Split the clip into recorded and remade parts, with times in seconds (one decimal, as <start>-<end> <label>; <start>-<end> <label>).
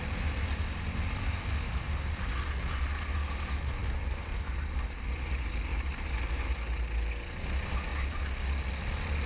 0.0-3.8 recorded; 3.8-4.4 remade; 4.4-5.7 recorded; 5.7-6.2 remade; 6.2-9.3 recorded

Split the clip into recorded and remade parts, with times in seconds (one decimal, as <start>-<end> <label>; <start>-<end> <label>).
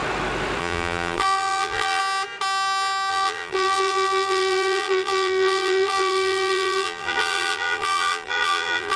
0.0-0.6 recorded; 0.6-2.0 remade; 2.0-3.1 recorded; 3.1-9.0 remade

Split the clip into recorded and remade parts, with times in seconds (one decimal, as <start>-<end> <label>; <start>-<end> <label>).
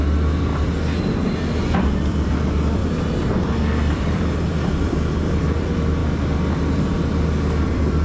0.0-0.5 remade; 0.5-1.3 recorded; 1.3-8.0 remade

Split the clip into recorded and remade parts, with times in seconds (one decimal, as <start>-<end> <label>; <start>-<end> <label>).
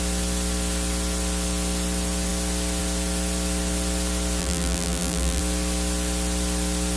0.0-4.4 recorded; 4.4-5.4 remade; 5.4-7.0 recorded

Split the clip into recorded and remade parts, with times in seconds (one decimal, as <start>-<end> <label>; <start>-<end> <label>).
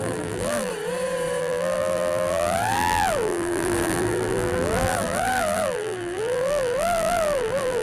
0.0-0.7 remade; 0.7-1.4 recorded; 1.4-7.8 remade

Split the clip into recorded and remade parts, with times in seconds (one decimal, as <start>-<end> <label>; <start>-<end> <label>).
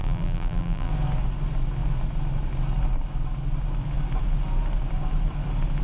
0.0-0.9 remade; 0.9-5.8 recorded